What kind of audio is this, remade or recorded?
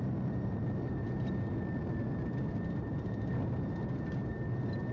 recorded